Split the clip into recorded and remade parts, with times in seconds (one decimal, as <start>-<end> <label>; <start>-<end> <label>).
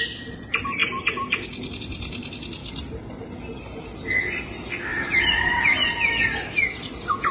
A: 0.0-4.9 recorded; 4.9-5.6 remade; 5.6-7.3 recorded